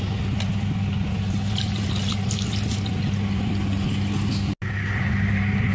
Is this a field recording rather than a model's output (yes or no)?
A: yes